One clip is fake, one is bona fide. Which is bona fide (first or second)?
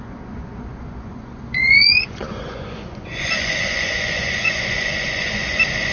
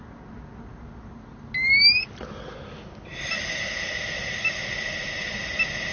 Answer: second